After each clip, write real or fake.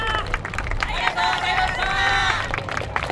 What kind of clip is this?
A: fake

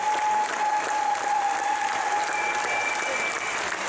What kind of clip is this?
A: real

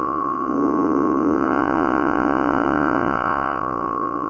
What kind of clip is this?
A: fake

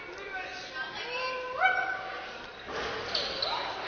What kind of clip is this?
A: real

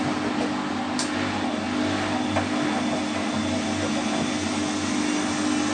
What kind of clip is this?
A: real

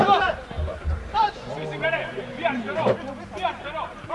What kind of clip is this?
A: fake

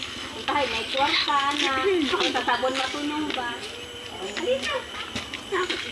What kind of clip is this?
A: real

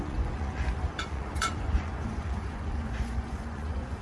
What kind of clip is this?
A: fake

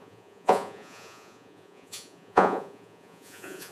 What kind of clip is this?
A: fake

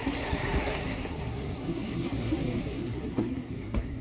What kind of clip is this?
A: fake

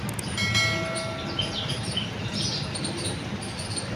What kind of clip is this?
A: real